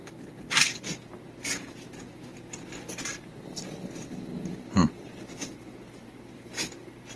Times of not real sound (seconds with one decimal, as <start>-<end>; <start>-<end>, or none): 1.7-2.3; 2.9-7.2